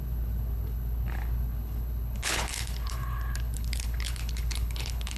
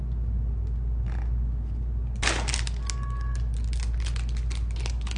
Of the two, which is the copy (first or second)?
first